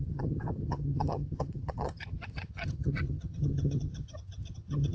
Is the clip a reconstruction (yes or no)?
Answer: yes